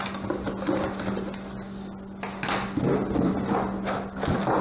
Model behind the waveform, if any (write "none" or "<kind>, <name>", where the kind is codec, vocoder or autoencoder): none